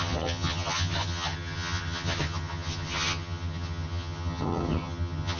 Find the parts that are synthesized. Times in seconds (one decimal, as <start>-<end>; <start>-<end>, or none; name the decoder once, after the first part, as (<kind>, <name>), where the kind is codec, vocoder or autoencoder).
0.0-5.4 (vocoder, HiFi-GAN)